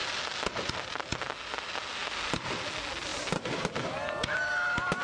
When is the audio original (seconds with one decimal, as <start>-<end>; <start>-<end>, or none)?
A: 0.0-5.0